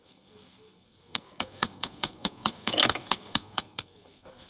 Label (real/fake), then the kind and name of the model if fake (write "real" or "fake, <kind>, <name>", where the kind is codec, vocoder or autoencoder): fake, codec, SNAC